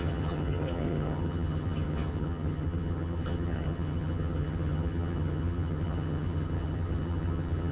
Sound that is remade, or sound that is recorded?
remade